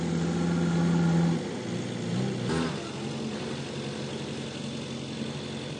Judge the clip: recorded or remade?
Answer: recorded